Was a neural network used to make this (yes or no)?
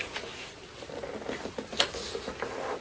no